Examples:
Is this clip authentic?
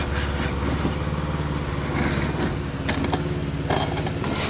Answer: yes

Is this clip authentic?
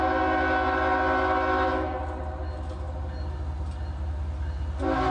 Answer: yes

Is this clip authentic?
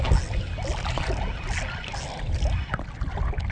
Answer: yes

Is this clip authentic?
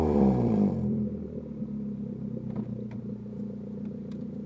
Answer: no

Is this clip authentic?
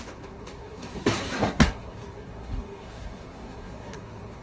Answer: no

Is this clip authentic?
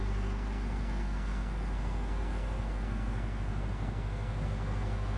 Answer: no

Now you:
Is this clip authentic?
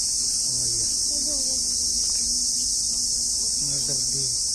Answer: yes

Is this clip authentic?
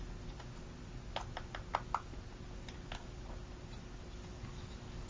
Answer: yes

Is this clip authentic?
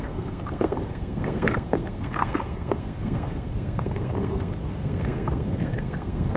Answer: no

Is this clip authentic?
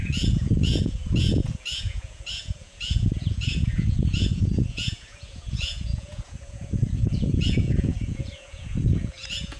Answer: no